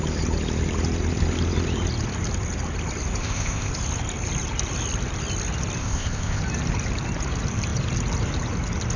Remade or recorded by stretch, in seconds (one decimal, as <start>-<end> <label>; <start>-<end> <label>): 0.0-3.2 recorded; 3.2-3.7 remade; 3.7-5.8 recorded; 5.8-6.4 remade; 6.4-9.0 recorded